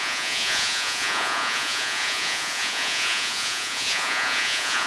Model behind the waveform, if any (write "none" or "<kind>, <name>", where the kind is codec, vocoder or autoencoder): vocoder, Vocos